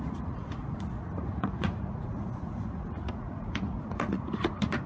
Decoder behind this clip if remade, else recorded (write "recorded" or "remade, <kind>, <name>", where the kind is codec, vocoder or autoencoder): remade, vocoder, Vocos